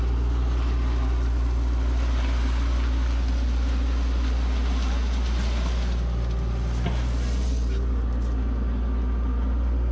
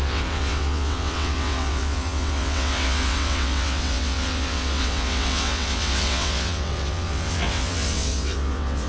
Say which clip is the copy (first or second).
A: second